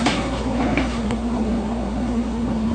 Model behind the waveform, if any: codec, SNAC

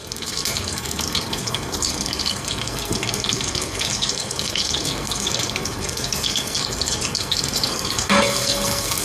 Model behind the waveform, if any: codec, SNAC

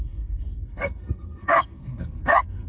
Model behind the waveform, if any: codec, SNAC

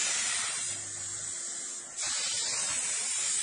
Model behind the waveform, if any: none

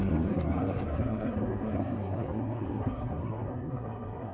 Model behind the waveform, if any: codec, SNAC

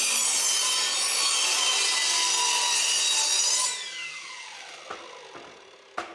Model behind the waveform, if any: none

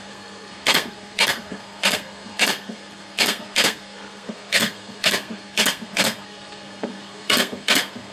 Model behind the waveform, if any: codec, SNAC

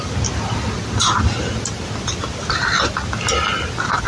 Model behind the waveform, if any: none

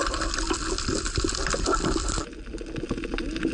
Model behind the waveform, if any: none